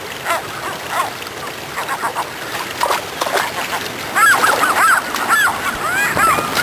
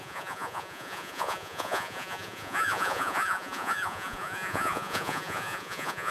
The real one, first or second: first